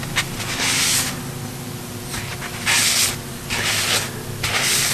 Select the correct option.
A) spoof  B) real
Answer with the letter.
B